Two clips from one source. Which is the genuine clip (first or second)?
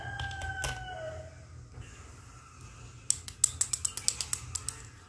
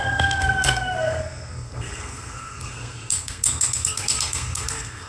first